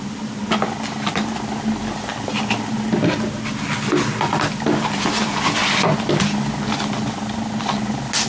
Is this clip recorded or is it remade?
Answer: recorded